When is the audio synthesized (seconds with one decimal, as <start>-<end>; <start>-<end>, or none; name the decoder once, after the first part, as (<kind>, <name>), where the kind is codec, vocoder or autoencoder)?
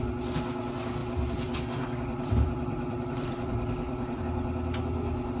1.0-4.2 (vocoder, BigVGAN v2)